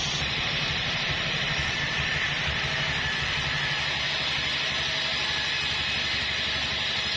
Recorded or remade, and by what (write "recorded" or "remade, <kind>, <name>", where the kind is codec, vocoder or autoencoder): remade, vocoder, BigVGAN v2